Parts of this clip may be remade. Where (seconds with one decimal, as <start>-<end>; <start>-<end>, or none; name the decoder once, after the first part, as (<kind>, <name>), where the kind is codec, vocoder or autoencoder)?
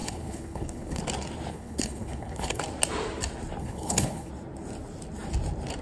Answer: 0.0-1.0 (codec, HILCodec); 1.5-2.6; 3.6-4.3